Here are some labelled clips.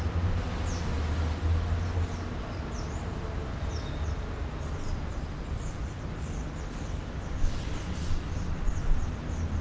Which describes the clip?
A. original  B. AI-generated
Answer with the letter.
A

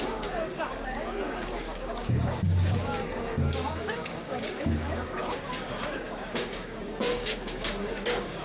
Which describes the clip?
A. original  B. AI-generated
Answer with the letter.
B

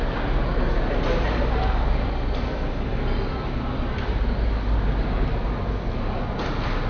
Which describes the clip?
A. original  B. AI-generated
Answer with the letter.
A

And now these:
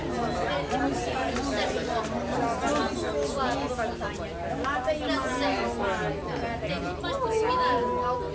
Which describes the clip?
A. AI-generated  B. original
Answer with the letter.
B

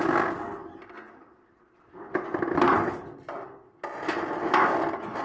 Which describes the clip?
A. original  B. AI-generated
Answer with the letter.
A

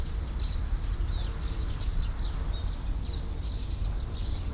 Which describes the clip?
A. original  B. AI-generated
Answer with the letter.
A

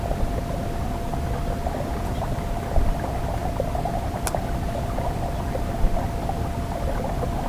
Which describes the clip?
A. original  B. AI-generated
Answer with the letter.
A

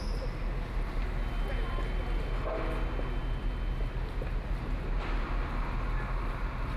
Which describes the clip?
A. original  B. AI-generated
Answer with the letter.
A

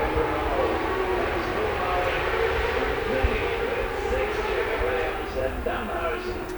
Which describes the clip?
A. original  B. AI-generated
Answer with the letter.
A